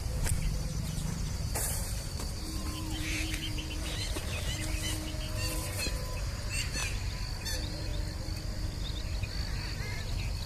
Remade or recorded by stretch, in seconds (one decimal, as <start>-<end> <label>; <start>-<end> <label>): 0.0-4.2 remade; 4.2-5.5 recorded; 5.5-6.8 remade; 6.8-7.4 recorded; 7.4-7.9 remade; 7.9-10.5 recorded